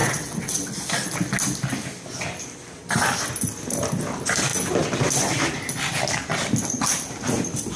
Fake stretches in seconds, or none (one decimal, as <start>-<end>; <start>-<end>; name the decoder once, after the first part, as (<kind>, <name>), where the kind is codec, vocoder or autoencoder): 0.0-0.7 (vocoder, WaveNeXt)